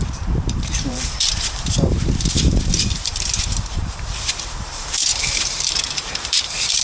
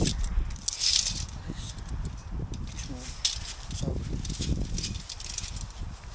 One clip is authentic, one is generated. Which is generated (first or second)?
first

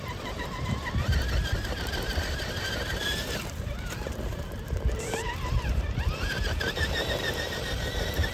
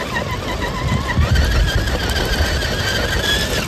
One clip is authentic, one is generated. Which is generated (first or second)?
first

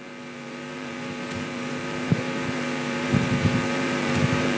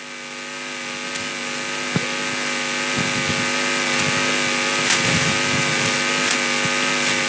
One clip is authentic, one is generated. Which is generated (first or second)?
first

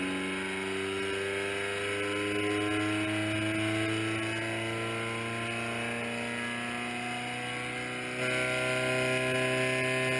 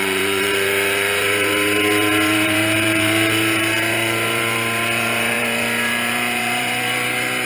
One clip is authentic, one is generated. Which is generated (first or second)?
second